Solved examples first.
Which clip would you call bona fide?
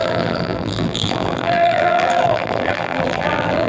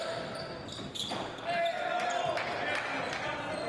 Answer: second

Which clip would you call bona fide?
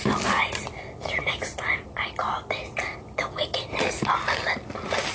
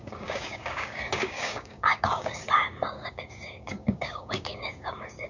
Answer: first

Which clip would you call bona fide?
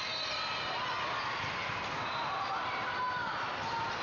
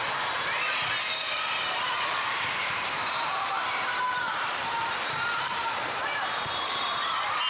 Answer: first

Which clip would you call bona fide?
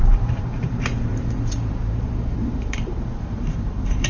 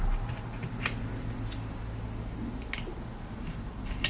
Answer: second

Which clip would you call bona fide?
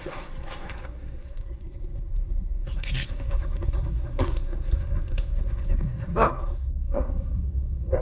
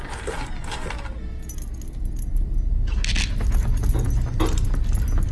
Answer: second